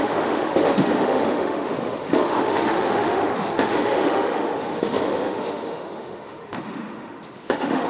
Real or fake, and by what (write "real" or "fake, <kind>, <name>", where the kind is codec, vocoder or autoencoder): fake, autoencoder, DAC-VAE